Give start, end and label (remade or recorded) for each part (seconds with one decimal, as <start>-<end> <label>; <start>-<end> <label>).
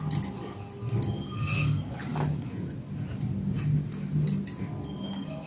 0.0-5.5 recorded